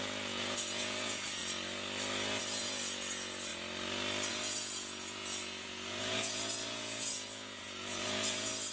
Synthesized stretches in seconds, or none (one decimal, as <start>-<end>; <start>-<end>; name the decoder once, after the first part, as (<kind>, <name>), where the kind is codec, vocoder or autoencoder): 0.0-1.4 (vocoder, Vocos); 2.4-3.5; 4.3-8.7